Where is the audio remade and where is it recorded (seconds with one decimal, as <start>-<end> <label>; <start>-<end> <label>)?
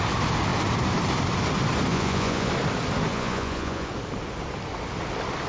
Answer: 0.0-1.9 recorded; 1.9-2.5 remade; 2.5-3.1 recorded; 3.1-3.9 remade; 3.9-5.5 recorded